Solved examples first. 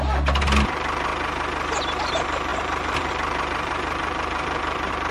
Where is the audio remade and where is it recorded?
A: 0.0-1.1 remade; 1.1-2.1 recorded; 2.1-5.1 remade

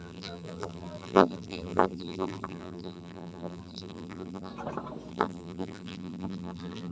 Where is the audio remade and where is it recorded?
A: 0.0-4.5 remade; 4.5-5.1 recorded; 5.1-6.9 remade